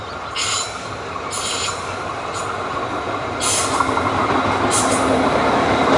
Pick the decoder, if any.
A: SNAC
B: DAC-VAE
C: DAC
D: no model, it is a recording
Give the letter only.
D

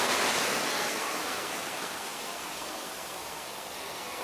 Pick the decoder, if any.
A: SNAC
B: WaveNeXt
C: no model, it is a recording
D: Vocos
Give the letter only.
A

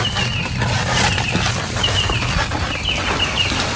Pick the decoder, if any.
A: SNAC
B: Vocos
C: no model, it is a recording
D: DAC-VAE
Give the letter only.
C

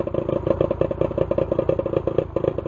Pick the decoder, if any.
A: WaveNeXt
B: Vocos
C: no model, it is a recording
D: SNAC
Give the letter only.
C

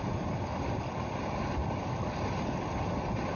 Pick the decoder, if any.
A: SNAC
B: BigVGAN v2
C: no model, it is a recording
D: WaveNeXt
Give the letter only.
C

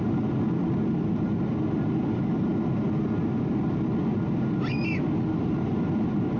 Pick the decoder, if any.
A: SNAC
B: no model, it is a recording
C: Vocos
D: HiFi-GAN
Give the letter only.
B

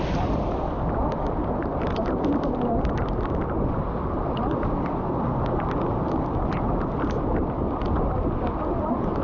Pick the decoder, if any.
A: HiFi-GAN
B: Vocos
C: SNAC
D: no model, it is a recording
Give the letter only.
D